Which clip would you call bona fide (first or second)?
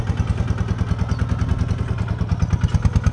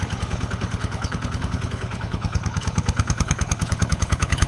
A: first